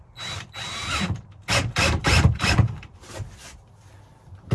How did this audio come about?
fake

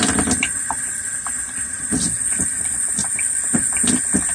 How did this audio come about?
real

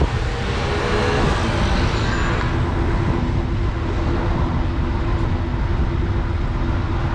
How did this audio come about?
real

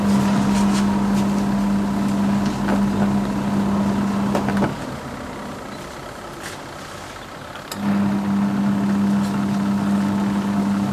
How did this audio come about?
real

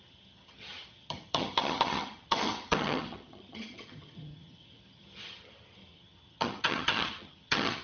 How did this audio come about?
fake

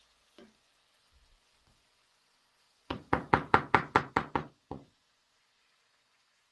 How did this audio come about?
fake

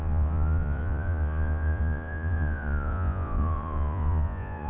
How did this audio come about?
fake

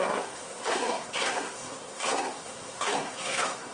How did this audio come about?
fake